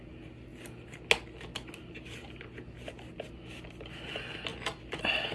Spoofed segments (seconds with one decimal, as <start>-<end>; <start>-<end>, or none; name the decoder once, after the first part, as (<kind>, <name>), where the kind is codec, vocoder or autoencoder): none